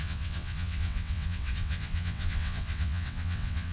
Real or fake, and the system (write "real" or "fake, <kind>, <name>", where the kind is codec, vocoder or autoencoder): fake, vocoder, WaveNeXt